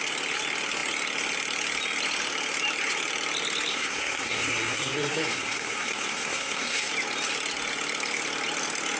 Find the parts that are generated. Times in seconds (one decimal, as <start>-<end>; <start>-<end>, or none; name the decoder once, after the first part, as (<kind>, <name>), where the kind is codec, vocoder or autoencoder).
3.7-6.9 (codec, SNAC)

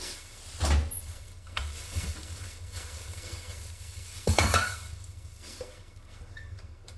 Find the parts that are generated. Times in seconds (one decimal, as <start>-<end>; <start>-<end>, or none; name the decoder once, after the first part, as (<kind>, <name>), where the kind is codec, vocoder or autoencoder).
0.0-0.4 (codec, SNAC); 1.0-7.0

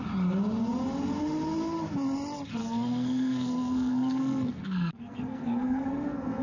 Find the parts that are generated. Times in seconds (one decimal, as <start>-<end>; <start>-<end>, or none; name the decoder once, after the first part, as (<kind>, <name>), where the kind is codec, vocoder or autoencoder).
2.6-6.4 (codec, SNAC)

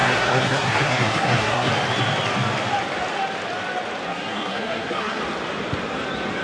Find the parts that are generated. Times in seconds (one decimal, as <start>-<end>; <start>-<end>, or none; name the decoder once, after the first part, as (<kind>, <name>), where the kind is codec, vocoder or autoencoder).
0.0-1.7 (codec, SNAC); 4.1-5.2

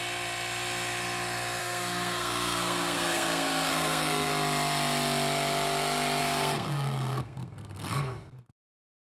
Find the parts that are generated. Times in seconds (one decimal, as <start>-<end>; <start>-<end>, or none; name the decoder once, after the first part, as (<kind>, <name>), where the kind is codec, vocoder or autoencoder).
1.6-4.3 (codec, SNAC); 6.2-9.0

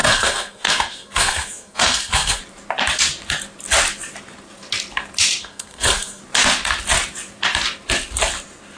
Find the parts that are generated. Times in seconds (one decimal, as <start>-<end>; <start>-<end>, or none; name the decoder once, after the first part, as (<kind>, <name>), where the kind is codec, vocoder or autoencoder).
0.0-2.4 (codec, SNAC); 5.4-6.2

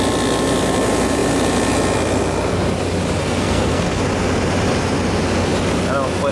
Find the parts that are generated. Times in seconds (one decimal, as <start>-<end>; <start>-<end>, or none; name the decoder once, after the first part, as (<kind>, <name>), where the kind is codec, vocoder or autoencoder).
3.2-4.0 (codec, SNAC)

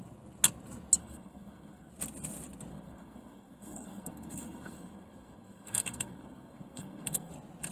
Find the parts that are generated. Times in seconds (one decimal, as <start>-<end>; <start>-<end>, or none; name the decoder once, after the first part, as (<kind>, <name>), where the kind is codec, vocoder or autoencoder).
1.0-1.9 (codec, SNAC); 2.7-7.3